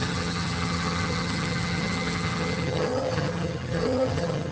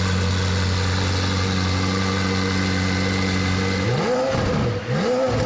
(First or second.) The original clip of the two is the second